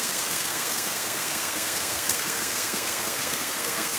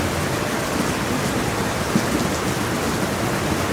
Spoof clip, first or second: first